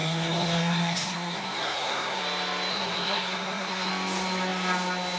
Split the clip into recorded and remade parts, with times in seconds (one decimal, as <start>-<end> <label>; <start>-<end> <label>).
0.0-2.2 remade; 2.2-2.7 recorded; 2.7-3.9 remade; 3.9-5.2 recorded